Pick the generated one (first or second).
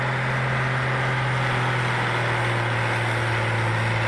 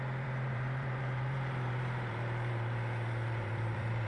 second